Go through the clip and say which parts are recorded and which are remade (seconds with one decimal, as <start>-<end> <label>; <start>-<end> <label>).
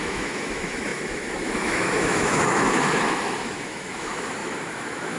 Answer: 0.0-5.2 remade